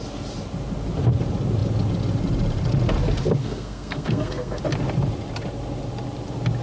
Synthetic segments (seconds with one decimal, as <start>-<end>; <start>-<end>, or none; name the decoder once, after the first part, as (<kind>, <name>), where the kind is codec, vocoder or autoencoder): 3.4-4.6 (codec, SNAC)